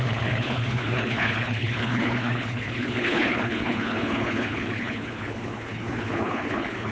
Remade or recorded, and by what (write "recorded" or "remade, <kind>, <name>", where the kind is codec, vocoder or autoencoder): remade, codec, HILCodec